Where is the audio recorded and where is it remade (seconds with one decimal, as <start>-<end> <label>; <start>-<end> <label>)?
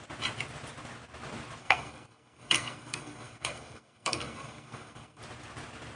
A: 0.0-1.6 recorded; 1.6-5.2 remade; 5.2-6.0 recorded